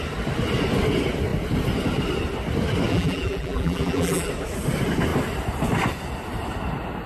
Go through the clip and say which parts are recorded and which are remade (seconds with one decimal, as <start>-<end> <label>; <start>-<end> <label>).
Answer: 0.0-2.9 recorded; 2.9-4.3 remade; 4.3-7.1 recorded